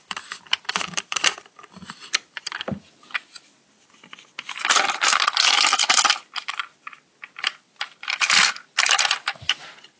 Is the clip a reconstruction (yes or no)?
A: yes